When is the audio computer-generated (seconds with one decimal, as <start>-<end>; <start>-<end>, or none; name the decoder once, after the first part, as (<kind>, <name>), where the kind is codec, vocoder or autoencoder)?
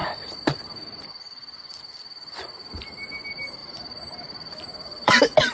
3.6-5.1 (vocoder, BigVGAN v2)